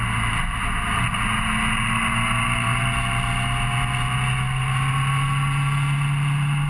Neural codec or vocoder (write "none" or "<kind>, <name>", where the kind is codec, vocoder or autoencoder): none